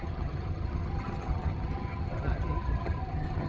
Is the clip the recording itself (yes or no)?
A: no